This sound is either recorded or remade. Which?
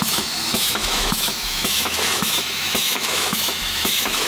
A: remade